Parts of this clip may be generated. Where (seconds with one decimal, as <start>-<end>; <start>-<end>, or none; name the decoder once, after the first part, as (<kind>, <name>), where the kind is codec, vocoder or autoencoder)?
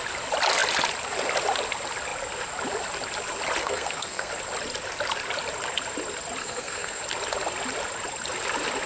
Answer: 3.6-4.3 (codec, SNAC); 6.4-7.0